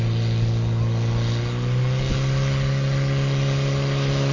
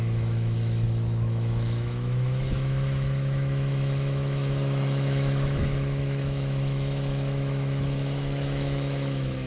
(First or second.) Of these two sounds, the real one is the first